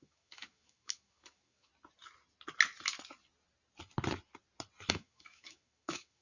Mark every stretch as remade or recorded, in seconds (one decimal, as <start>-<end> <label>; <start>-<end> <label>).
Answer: 0.0-1.7 remade; 1.7-4.9 recorded; 4.9-6.2 remade